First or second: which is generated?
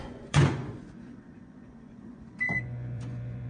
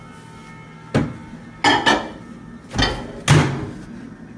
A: first